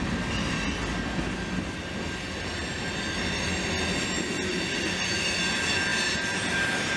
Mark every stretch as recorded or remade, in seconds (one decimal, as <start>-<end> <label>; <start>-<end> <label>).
0.0-7.0 recorded